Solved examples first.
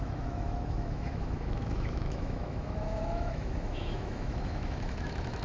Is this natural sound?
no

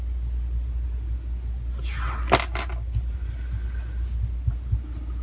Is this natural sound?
yes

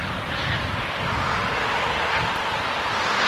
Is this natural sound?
yes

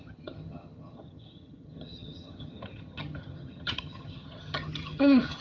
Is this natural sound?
no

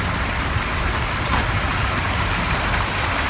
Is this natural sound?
yes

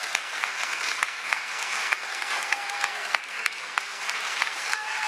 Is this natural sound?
no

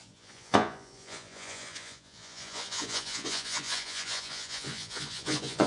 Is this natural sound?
no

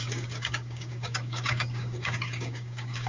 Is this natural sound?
no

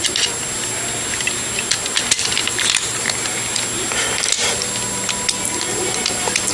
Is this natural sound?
yes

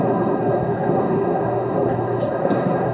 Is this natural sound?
no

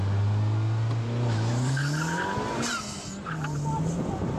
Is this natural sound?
yes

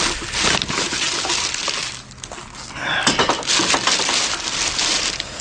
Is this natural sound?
yes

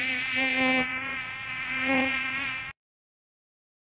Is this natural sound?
no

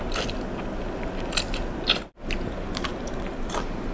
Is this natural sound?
yes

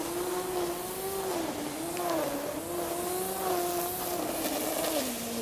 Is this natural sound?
yes